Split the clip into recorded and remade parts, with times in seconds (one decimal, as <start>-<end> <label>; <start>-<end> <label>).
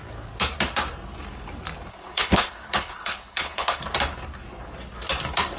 0.0-1.9 recorded; 1.9-3.8 remade; 3.8-5.6 recorded